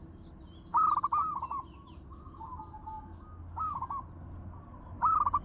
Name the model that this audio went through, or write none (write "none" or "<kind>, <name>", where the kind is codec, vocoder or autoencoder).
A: none